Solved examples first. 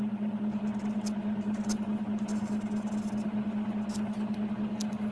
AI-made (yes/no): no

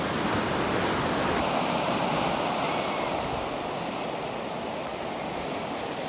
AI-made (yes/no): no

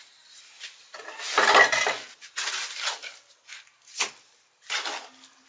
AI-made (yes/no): no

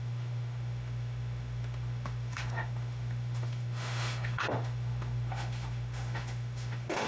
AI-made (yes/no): yes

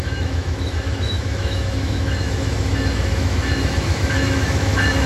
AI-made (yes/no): yes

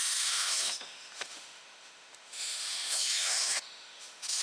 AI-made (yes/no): yes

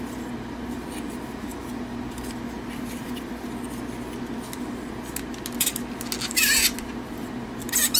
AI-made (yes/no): no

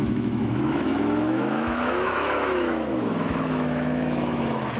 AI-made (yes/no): yes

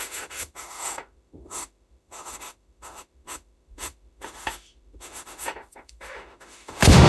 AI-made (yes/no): yes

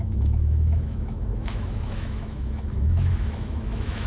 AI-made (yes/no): yes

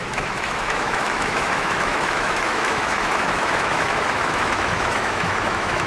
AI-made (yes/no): yes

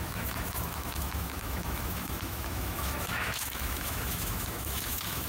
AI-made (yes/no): yes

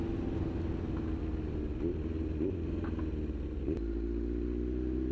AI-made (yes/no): no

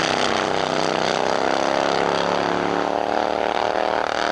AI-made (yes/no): no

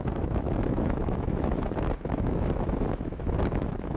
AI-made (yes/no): yes